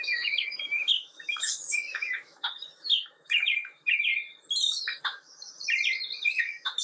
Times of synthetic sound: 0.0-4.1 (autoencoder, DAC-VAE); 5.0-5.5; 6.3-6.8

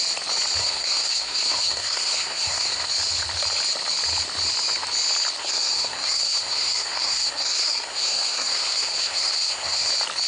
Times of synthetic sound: 0.6-2.9 (codec, SNAC); 5.4-9.9

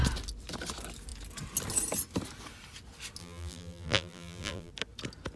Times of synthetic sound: 3.2-4.7 (vocoder, BigVGAN v2)